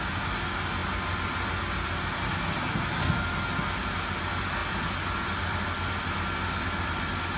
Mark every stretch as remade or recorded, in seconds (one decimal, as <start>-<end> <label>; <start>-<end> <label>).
0.0-7.4 recorded